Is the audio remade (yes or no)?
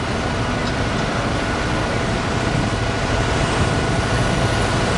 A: no